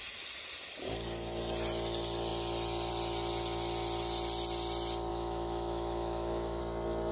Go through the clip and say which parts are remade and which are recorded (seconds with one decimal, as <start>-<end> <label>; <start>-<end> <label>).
0.0-5.1 recorded; 5.1-6.6 remade; 6.6-7.1 recorded